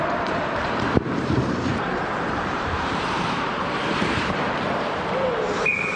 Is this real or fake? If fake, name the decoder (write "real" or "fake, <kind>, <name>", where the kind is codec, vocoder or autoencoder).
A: fake, vocoder, BigVGAN v2